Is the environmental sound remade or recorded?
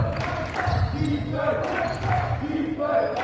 recorded